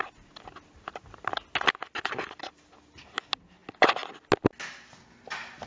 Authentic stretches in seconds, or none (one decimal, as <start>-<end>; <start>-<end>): 0.0-5.7